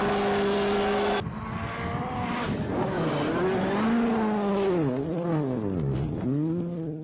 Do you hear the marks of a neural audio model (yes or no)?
no